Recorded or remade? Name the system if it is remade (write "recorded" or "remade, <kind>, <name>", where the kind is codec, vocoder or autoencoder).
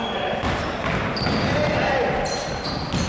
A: recorded